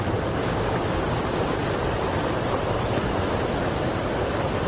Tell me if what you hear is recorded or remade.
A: recorded